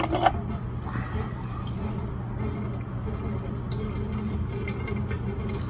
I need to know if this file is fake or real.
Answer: real